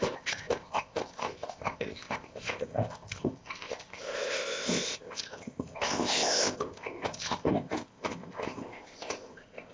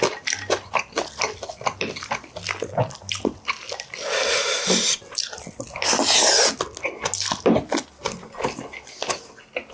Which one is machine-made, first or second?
first